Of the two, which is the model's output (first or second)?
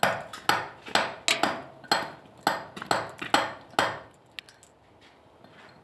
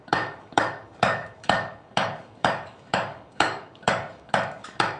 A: second